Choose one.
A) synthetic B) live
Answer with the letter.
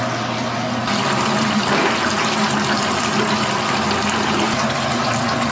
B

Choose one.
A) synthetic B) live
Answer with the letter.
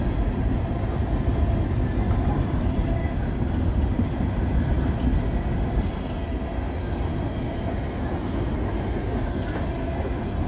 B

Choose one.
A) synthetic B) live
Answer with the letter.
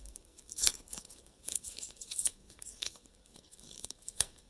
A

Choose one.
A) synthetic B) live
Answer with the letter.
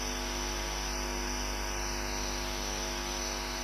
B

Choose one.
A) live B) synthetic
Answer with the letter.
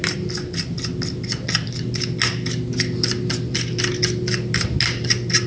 A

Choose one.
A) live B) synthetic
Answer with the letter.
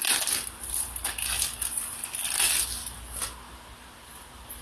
A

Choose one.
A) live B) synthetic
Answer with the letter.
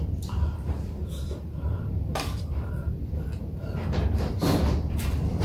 B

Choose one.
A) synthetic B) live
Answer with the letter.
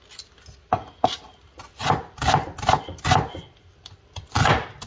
B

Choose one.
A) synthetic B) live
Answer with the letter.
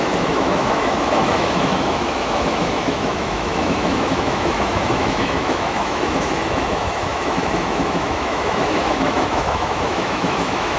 A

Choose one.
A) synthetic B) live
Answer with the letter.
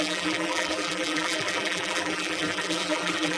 A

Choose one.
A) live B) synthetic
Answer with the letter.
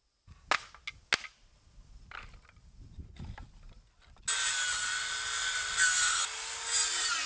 A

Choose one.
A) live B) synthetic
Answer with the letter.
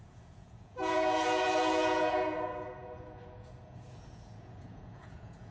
B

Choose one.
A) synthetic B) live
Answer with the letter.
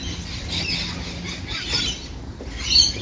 B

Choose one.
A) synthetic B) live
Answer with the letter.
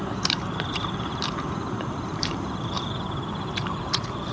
A